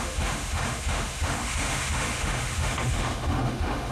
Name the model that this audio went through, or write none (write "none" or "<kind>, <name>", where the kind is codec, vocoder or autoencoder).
autoencoder, DAC-VAE